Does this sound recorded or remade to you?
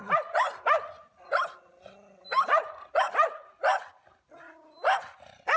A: recorded